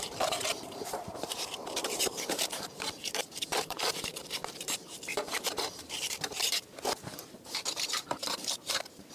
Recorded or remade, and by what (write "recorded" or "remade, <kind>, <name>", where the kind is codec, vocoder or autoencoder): remade, vocoder, BigVGAN v2